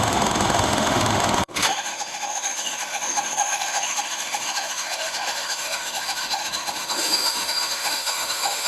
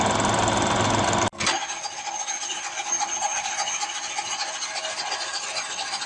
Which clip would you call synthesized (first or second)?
first